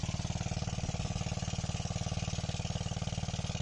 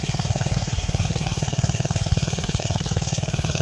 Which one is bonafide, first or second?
first